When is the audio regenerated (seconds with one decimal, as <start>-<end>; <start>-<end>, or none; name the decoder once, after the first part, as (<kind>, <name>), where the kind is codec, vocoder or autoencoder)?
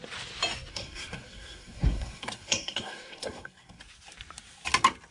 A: 0.7-3.8 (codec, SNAC)